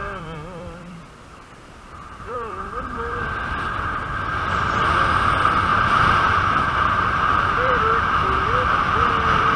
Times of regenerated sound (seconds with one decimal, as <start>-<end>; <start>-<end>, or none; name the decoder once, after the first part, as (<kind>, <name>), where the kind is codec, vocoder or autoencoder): 0.0-3.2 (vocoder, BigVGAN v2); 5.7-7.7